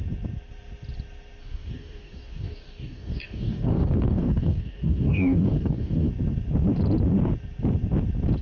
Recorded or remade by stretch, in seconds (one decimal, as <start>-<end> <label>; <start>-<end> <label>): 0.0-1.4 recorded; 1.4-6.1 remade; 6.1-8.4 recorded